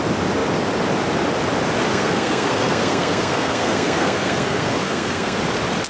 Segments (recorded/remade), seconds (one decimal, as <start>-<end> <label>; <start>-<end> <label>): 0.0-1.9 recorded; 1.9-5.4 remade; 5.4-5.9 recorded